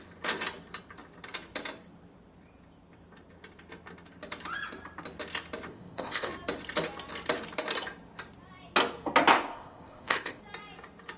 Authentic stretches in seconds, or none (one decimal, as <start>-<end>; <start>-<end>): 0.0-5.7; 6.3-9.3; 10.4-11.2